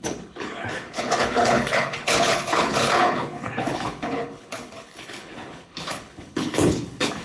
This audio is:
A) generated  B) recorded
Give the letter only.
A